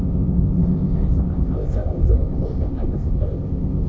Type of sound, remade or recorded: remade